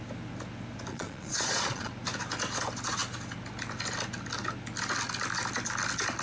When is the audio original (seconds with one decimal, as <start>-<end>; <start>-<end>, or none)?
0.0-0.9; 1.9-6.2